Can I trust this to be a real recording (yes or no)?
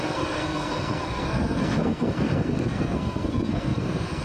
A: no